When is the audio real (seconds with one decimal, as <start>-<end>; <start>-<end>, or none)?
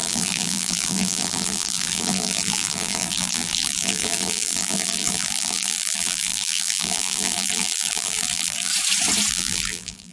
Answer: 8.7-9.3